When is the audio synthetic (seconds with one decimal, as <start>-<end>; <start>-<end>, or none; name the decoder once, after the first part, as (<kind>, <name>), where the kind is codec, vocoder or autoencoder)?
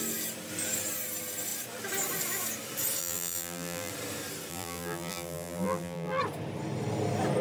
3.0-3.9 (vocoder, BigVGAN v2); 4.5-6.2